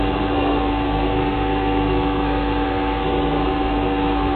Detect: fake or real fake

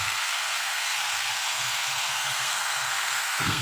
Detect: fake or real fake